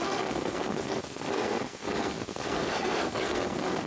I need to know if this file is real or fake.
fake